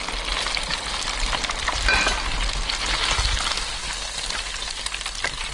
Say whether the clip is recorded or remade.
recorded